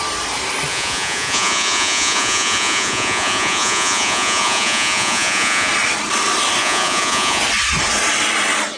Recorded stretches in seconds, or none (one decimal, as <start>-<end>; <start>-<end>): 0.0-0.7; 5.7-6.6; 7.4-8.8